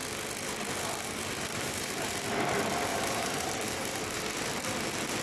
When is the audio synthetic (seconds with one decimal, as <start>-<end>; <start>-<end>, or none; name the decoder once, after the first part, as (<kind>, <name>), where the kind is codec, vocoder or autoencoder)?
1.5-2.1 (vocoder, BigVGAN v2); 2.9-4.2